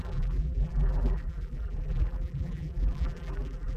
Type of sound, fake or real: fake